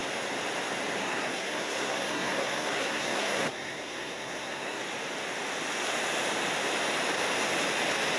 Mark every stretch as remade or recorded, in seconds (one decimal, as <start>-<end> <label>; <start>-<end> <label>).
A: 0.0-1.0 recorded; 1.0-4.8 remade; 4.8-8.2 recorded